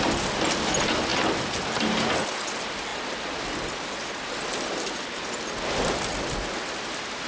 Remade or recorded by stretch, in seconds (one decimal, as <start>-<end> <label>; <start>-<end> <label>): 0.0-7.3 recorded